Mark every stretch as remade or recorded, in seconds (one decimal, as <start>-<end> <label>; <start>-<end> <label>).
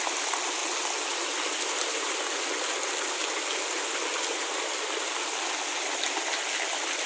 0.0-7.1 recorded